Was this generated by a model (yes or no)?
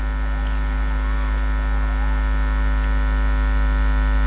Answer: no